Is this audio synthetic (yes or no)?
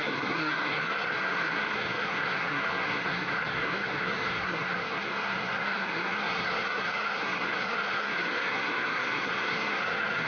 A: yes